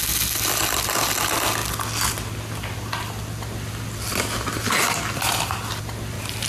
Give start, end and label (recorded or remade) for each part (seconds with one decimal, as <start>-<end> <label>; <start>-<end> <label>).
0.0-6.5 recorded